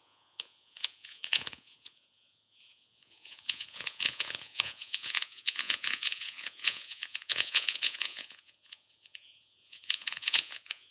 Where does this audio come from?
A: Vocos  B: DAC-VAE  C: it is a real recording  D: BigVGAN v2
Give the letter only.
A